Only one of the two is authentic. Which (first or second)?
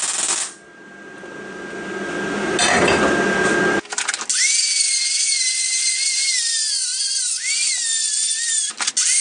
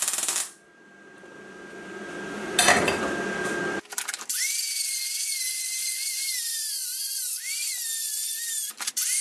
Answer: first